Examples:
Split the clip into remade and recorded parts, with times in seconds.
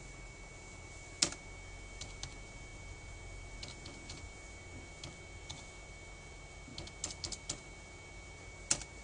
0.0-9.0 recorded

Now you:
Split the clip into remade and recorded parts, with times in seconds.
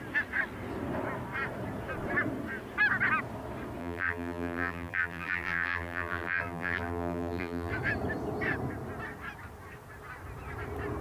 0.0-3.8 recorded; 3.8-7.7 remade; 7.7-11.0 recorded